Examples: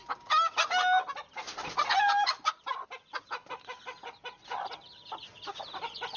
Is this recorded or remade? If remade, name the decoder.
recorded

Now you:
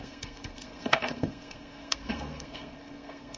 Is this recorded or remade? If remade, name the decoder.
remade, codec, SNAC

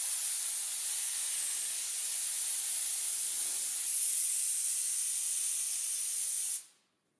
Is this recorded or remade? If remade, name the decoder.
recorded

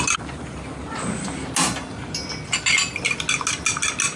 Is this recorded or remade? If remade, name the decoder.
recorded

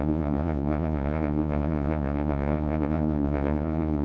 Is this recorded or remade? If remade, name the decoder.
remade, vocoder, Vocos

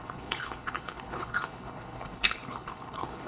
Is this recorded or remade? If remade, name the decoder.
remade, codec, HILCodec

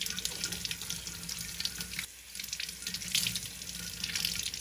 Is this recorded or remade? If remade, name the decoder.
recorded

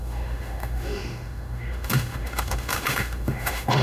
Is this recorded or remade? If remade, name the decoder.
remade, autoencoder, DAC-VAE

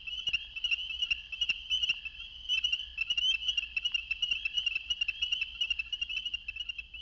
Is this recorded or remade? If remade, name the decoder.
recorded